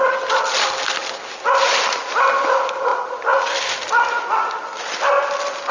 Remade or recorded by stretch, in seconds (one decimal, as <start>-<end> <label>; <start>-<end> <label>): 0.0-2.9 recorded; 2.9-3.7 remade; 3.7-5.7 recorded